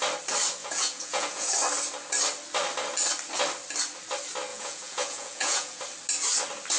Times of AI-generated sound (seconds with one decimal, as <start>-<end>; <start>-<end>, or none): 0.6-1.5; 4.5-5.8